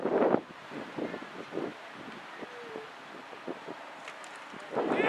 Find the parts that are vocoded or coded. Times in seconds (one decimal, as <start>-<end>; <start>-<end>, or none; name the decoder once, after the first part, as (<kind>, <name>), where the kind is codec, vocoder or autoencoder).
none